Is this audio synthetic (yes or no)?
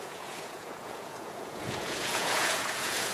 yes